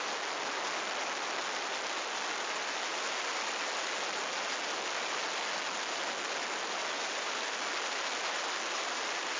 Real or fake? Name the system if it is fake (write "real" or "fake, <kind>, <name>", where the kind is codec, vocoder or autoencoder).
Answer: real